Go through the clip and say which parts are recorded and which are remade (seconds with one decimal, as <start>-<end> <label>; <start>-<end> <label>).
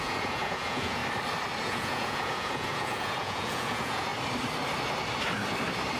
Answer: 0.0-1.0 remade; 1.0-1.6 recorded; 1.6-4.1 remade; 4.1-6.0 recorded